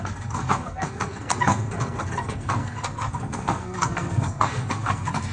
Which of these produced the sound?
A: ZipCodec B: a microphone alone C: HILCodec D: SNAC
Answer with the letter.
D